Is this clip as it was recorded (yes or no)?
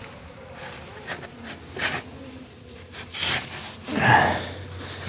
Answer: yes